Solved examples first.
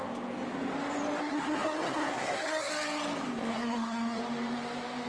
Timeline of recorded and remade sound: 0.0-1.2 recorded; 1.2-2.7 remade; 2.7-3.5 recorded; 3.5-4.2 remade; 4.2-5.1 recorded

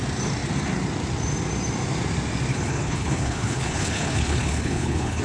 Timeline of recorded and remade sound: 0.0-2.5 recorded; 2.5-5.2 remade

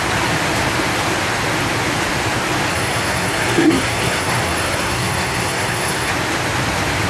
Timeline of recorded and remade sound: 0.0-2.7 recorded; 2.7-6.1 remade; 6.1-7.1 recorded

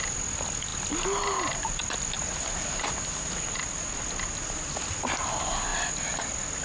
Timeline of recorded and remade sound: 0.0-6.6 recorded

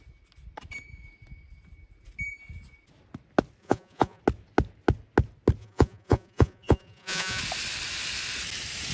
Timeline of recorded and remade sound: 0.0-3.6 recorded; 3.6-4.2 remade; 4.2-5.6 recorded; 5.6-7.4 remade; 7.4-8.9 recorded

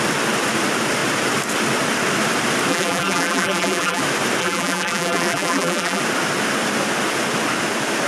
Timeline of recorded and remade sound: 0.0-2.7 recorded; 2.7-4.0 remade; 4.0-4.4 recorded; 4.4-6.0 remade; 6.0-8.1 recorded